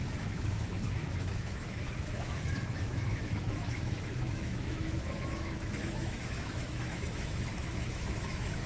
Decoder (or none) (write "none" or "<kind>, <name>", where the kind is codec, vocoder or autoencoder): autoencoder, DAC-VAE